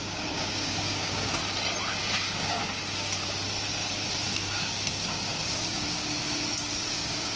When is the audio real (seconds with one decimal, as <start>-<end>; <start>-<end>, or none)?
1.4-2.0; 2.6-3.9